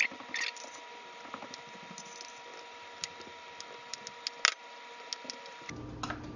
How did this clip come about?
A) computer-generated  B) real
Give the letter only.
B